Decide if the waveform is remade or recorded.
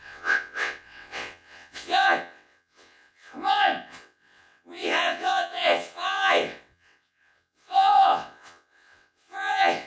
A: remade